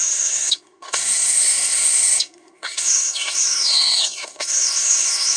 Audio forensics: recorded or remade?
remade